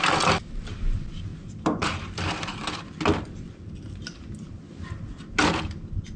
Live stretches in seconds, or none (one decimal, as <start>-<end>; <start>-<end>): 0.0-1.3; 5.0-6.2